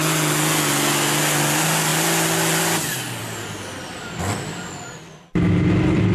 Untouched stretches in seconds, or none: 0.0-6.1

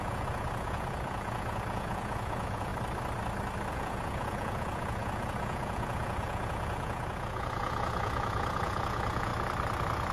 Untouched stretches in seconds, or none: 2.7-3.7; 9.3-10.1

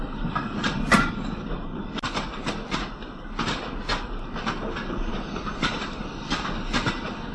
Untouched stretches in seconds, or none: 3.9-5.1

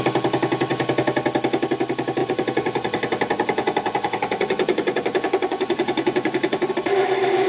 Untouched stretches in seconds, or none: 0.0-2.2; 6.7-7.5

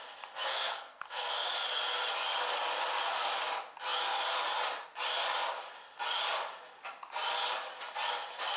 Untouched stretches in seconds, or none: 0.0-0.5; 1.5-8.6

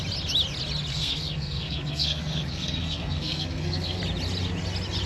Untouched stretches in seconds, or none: 0.0-0.9; 4.0-5.1